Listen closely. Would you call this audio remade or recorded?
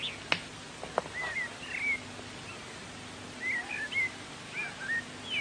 recorded